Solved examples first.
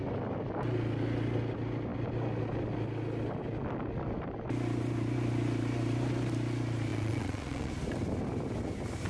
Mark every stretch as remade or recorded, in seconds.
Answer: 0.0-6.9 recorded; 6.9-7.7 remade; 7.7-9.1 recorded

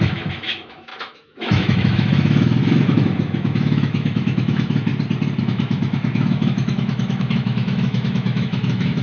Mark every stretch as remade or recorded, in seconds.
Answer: 0.0-4.9 remade; 4.9-5.4 recorded; 5.4-9.0 remade

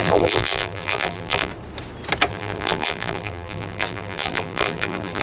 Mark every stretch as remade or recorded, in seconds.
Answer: 0.0-1.5 remade; 1.5-2.3 recorded; 2.3-5.2 remade

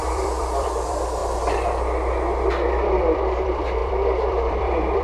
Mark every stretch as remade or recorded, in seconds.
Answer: 0.0-1.2 remade; 1.2-3.0 recorded; 3.0-5.0 remade